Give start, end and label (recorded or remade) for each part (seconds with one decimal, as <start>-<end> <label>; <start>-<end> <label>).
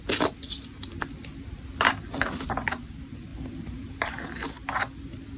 0.0-3.3 recorded; 3.3-4.1 remade; 4.1-5.4 recorded